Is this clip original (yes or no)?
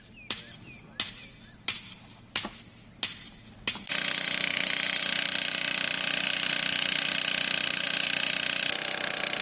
yes